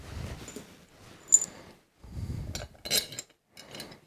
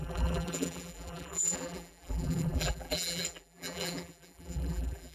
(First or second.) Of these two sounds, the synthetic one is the second